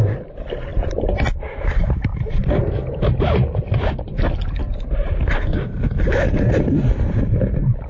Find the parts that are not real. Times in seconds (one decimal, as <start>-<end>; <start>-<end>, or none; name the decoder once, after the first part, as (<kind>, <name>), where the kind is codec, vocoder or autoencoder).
none